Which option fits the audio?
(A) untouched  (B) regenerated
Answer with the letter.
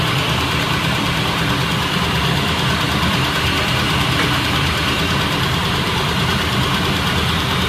B